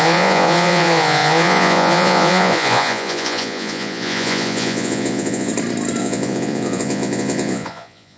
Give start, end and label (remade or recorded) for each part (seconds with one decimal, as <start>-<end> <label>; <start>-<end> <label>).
0.0-5.5 remade; 5.5-6.0 recorded; 6.0-8.2 remade